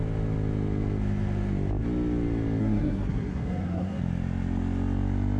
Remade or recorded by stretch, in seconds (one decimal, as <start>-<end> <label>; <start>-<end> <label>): 0.0-2.6 recorded; 2.6-4.0 remade; 4.0-5.4 recorded